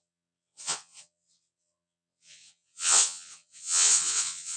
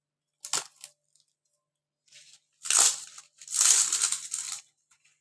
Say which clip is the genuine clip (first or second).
second